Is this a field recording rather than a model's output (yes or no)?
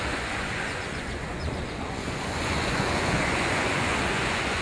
no